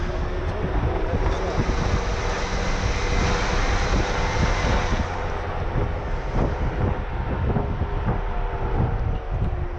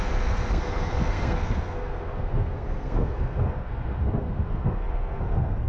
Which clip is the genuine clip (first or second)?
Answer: first